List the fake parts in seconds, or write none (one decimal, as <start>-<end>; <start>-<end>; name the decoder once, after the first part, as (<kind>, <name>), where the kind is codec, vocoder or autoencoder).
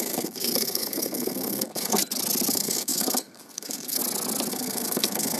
0.0-2.0 (codec, SNAC); 2.5-4.0; 4.5-5.4